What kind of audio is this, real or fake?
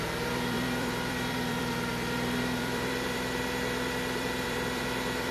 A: fake